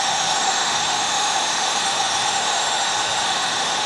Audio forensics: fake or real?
fake